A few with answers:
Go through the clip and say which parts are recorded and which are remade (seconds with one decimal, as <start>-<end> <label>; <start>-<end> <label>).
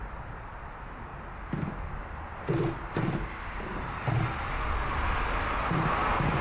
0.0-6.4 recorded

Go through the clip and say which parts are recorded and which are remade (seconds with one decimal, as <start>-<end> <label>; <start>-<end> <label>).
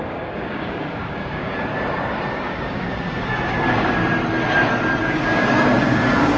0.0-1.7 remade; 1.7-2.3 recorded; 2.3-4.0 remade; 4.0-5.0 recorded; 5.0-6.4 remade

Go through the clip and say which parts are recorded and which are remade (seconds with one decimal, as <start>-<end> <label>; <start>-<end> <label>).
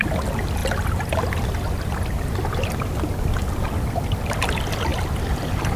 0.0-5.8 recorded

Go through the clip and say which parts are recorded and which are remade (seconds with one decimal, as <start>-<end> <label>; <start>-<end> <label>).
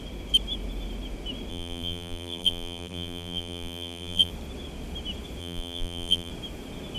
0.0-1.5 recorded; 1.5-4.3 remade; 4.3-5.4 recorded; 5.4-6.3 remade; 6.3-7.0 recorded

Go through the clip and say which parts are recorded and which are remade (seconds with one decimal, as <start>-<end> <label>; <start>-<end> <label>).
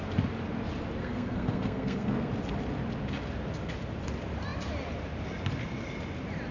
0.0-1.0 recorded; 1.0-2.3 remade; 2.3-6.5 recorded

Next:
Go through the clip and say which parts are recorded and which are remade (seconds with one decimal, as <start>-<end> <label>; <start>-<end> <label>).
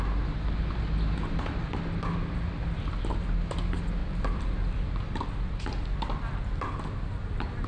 0.0-4.0 recorded; 4.0-6.4 remade; 6.4-7.7 recorded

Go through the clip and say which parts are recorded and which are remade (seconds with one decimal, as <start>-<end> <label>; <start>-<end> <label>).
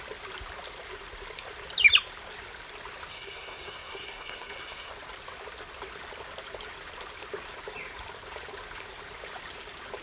0.0-3.1 recorded; 3.1-4.9 remade; 4.9-10.0 recorded